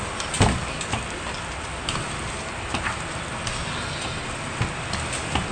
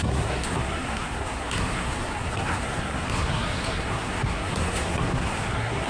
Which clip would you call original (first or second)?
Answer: first